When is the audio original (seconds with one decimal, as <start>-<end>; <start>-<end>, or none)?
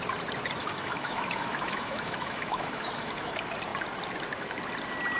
0.0-0.6; 3.3-5.2